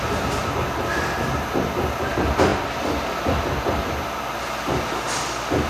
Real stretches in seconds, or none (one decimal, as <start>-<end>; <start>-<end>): 0.0-5.7